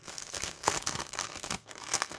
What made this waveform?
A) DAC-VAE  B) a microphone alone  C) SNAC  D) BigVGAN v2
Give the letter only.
C